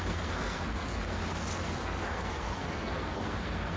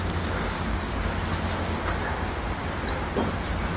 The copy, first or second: first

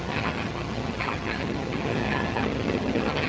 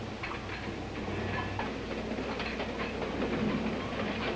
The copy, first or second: first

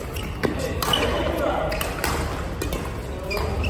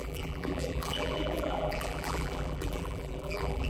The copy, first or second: second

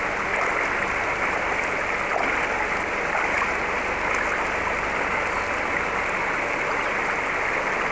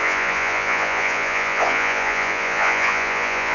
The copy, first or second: second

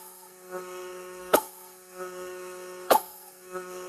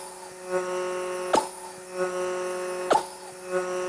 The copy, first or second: first